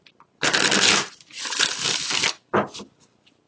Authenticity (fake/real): real